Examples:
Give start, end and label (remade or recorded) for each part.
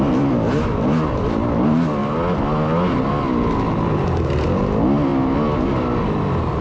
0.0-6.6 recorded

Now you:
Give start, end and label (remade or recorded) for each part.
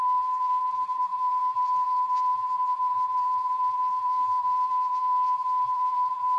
0.0-6.4 remade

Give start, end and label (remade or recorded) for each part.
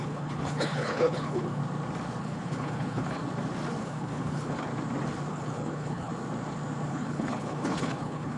0.0-1.6 remade; 1.6-2.2 recorded; 2.2-3.2 remade; 3.2-3.8 recorded; 3.8-4.7 remade; 4.7-5.3 recorded; 5.3-6.1 remade; 6.1-6.9 recorded; 6.9-8.4 remade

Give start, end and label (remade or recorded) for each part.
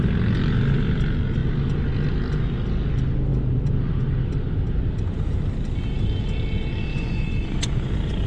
0.0-6.9 recorded; 6.9-7.9 remade; 7.9-8.3 recorded